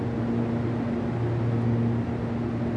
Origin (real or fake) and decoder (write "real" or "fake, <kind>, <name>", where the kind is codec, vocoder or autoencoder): real